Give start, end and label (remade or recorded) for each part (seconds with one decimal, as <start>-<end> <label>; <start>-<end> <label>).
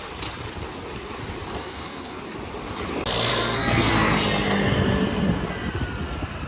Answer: 0.0-1.6 recorded; 1.6-2.2 remade; 2.2-3.3 recorded; 3.3-3.9 remade; 3.9-6.5 recorded